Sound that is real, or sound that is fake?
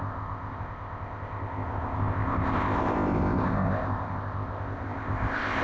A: fake